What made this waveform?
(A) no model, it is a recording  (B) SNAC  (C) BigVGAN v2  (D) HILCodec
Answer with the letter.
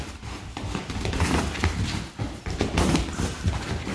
A